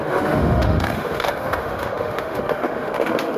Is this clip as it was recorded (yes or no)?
no